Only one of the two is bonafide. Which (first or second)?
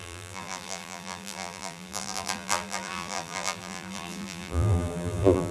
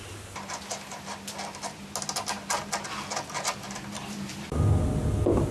second